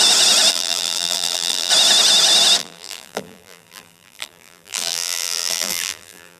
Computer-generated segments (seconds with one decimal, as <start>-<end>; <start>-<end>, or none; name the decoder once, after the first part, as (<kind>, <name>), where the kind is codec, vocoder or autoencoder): 0.5-1.7 (vocoder, BigVGAN v2); 2.6-6.4